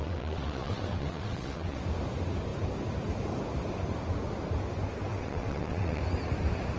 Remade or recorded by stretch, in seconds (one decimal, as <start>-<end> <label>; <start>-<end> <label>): 0.0-1.8 remade; 1.8-5.1 recorded; 5.1-6.0 remade; 6.0-6.8 recorded